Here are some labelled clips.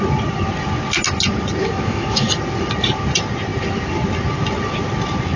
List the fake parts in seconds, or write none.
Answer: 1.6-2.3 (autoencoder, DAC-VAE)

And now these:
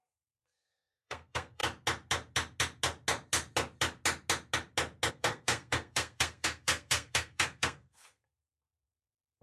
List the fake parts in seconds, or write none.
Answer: 0.0-1.6 (codec, SNAC); 5.1-9.4

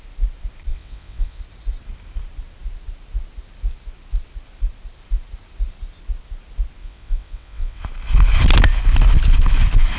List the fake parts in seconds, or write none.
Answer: 0.7-1.4 (vocoder, WaveNeXt); 6.8-7.8

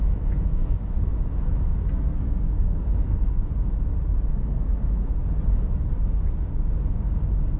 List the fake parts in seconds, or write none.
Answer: 0.5-1.1 (codec, SNAC); 1.7-3.4; 4.3-5.1

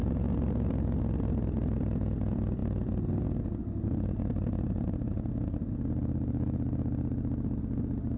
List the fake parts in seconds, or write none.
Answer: 0.0-1.0 (vocoder, BigVGAN v2)

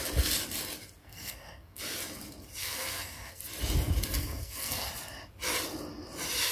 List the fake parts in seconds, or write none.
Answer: 1.0-1.8 (codec, SNAC); 2.6-3.4; 4.2-4.9